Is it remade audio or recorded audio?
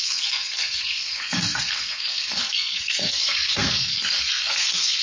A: remade